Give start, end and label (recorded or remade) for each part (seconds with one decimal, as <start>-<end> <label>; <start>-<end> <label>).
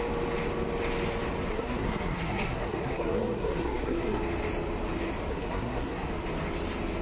0.0-1.5 recorded; 1.5-4.2 remade; 4.2-5.3 recorded; 5.3-6.1 remade; 6.1-7.0 recorded